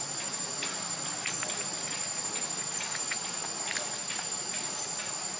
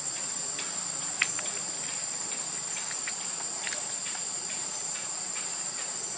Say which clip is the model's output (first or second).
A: second